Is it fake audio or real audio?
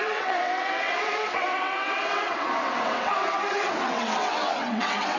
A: fake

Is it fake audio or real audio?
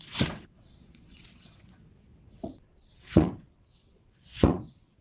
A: fake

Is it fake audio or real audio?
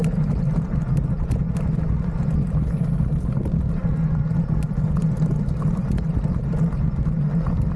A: real